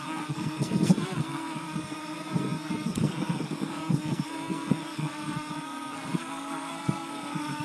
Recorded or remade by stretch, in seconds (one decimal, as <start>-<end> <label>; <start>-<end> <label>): 0.0-7.6 remade